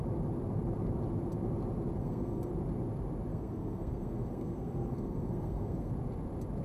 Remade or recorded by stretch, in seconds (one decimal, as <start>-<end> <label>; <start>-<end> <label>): 0.0-2.0 recorded; 2.0-2.5 remade; 2.5-3.3 recorded; 3.3-5.9 remade; 5.9-6.6 recorded